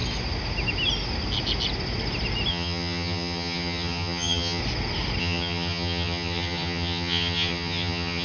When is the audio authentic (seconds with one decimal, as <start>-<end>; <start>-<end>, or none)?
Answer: 0.0-2.5; 4.6-5.2